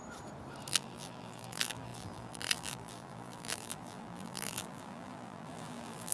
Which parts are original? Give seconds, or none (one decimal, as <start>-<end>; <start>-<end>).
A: 0.0-0.7